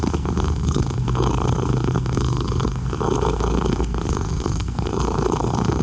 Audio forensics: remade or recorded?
remade